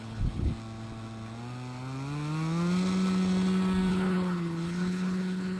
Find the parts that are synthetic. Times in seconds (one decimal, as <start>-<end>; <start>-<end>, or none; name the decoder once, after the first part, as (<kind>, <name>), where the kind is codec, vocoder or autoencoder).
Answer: 0.0-0.5 (codec, HILCodec); 3.9-5.6